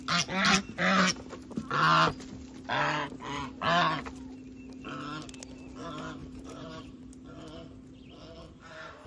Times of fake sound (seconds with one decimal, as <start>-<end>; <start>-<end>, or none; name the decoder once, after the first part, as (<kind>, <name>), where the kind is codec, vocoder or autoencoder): 6.2-7.0 (vocoder, BigVGAN v2)